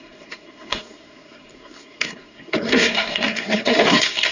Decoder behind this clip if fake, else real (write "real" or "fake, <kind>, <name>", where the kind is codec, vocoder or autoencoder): fake, codec, SNAC